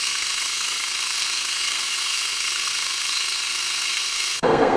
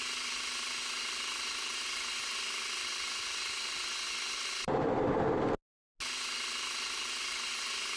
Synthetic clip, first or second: first